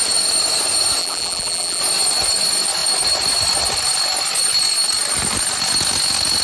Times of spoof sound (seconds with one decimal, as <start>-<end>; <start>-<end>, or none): 1.0-1.8